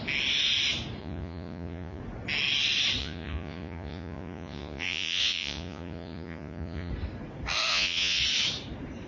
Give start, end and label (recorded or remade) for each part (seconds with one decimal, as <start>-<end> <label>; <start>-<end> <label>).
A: 0.0-1.0 recorded; 1.0-2.0 remade; 2.0-3.0 recorded; 3.0-6.9 remade; 6.9-7.7 recorded; 7.7-8.2 remade; 8.2-9.1 recorded

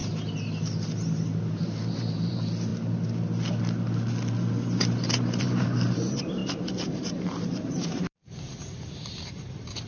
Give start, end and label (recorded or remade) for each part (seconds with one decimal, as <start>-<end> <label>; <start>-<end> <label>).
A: 0.0-1.6 recorded; 1.6-2.7 remade; 2.7-5.4 recorded; 5.4-6.4 remade; 6.4-6.9 recorded; 6.9-9.9 remade

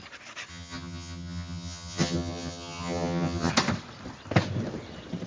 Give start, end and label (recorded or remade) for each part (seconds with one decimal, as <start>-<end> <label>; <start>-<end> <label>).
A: 0.0-0.5 recorded; 0.5-3.5 remade; 3.5-5.3 recorded